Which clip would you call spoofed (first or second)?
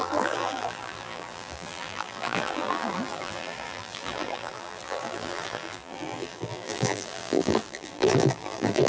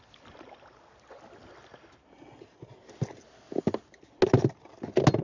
first